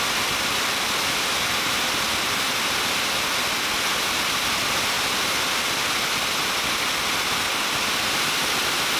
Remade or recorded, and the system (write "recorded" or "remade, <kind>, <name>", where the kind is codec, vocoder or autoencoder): recorded